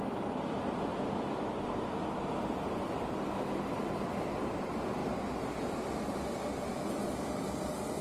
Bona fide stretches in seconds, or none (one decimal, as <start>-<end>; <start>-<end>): 0.0-8.0